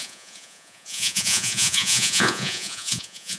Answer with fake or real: fake